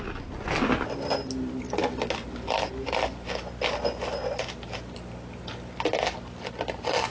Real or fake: real